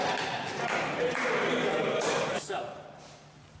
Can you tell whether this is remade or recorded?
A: remade